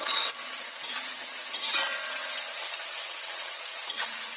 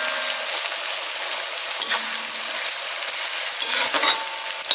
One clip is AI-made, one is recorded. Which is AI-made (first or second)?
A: first